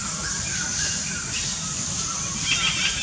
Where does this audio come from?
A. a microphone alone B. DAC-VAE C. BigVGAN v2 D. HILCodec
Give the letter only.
A